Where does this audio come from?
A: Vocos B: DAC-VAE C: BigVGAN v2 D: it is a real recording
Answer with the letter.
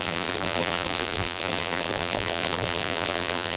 C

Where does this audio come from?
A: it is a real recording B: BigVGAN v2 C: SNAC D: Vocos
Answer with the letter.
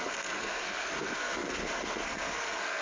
C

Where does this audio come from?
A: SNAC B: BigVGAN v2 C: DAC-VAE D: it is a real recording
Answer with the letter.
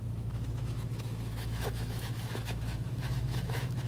C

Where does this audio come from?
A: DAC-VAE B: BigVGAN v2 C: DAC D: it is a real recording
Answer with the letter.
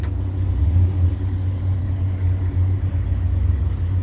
C